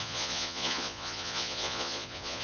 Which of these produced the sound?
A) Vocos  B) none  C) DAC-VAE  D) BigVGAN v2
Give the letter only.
A